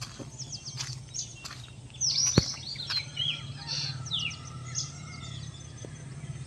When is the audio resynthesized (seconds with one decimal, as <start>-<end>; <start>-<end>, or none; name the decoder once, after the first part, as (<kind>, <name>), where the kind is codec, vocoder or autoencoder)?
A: none